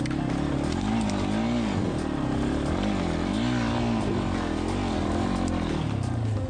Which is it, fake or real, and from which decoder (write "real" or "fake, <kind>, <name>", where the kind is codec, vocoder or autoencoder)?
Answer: real